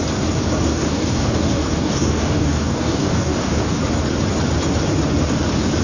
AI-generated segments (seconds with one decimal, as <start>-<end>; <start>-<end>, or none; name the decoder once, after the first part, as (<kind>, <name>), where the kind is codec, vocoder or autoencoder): 0.7-3.8 (codec, DAC)